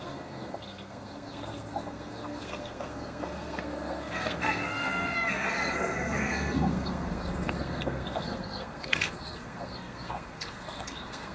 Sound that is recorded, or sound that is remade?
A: remade